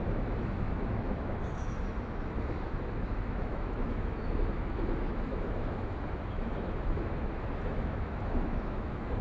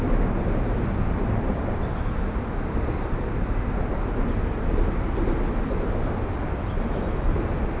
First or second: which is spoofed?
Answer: first